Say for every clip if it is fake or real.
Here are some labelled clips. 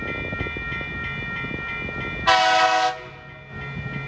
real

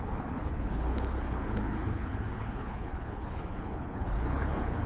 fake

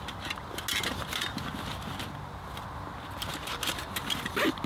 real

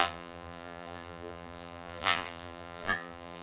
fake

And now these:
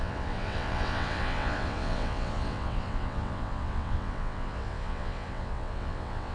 fake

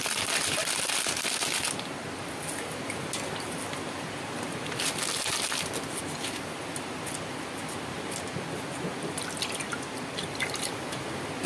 real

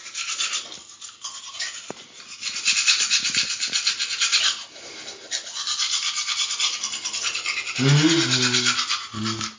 real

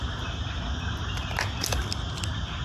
real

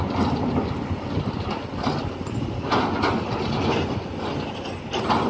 real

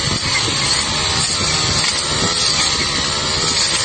real